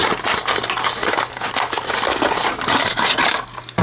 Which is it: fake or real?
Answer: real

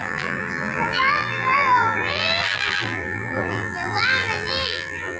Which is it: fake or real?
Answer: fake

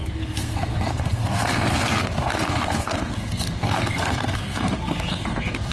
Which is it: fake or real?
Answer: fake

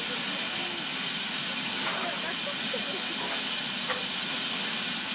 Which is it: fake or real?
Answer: real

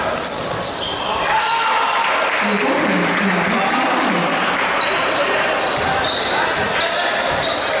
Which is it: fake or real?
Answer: real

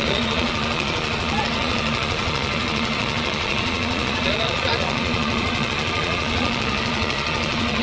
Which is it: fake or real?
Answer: fake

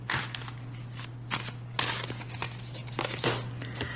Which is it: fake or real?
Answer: real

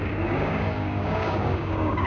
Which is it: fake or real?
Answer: fake